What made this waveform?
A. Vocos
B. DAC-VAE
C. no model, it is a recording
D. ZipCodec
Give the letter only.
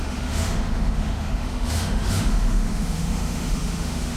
B